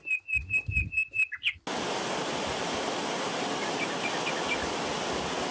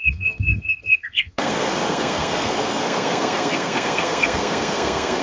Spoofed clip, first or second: second